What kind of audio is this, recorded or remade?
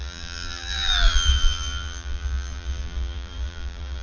remade